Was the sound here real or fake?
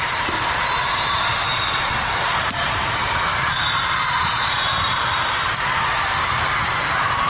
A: fake